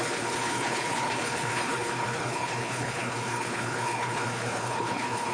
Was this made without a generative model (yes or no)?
no